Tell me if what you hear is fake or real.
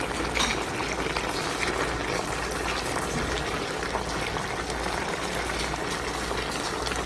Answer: real